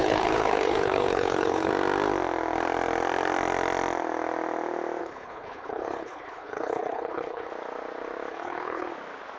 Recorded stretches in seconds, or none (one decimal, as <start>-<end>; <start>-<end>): 1.7-5.0; 7.5-8.3; 8.9-9.4